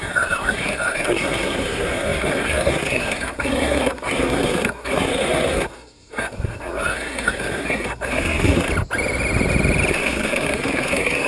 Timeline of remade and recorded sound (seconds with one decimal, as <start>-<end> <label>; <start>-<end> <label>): 0.0-8.7 remade; 8.7-9.9 recorded; 9.9-11.3 remade